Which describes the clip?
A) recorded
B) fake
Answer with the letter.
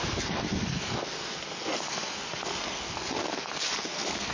B